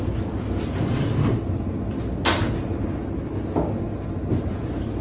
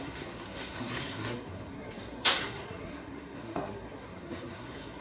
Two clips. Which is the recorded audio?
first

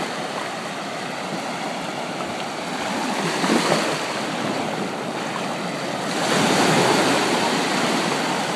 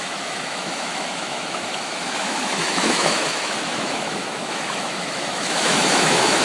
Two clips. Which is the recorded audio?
first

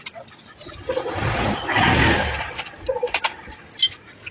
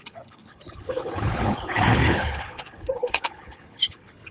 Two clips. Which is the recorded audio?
first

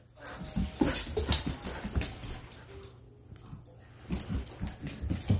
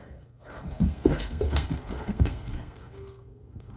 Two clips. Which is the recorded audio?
first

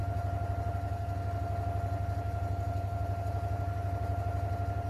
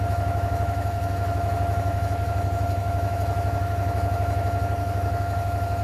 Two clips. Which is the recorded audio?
first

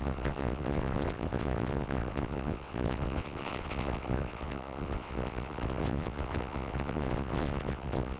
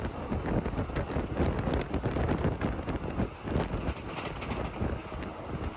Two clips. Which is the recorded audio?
second